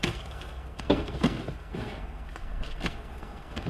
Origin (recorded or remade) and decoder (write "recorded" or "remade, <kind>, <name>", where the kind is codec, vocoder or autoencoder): remade, codec, SNAC